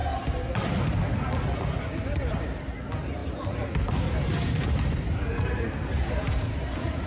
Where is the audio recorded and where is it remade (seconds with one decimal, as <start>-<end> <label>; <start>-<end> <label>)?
0.0-7.1 recorded